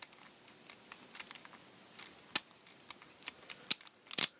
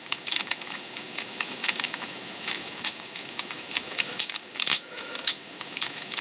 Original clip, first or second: first